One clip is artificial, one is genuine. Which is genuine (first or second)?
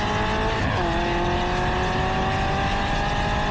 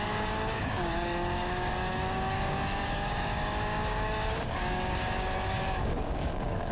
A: first